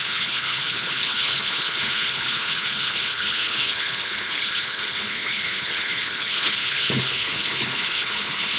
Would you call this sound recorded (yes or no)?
no